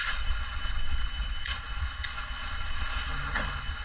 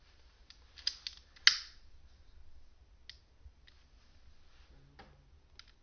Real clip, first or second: second